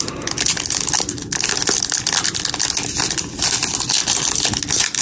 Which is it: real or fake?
real